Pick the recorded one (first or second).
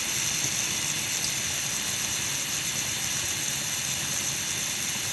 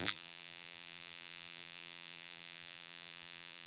first